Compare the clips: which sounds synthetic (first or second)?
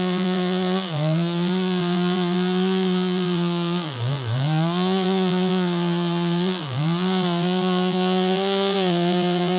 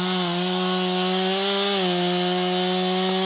first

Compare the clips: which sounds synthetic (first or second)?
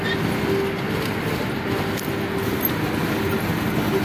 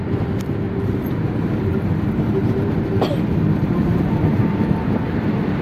second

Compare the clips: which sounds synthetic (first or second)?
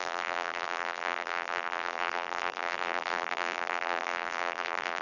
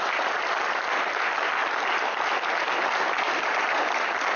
first